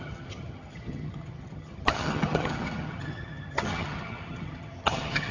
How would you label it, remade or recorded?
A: remade